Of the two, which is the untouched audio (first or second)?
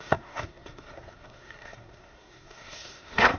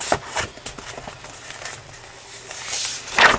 second